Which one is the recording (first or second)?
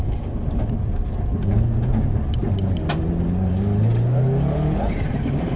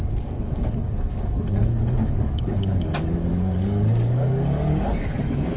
first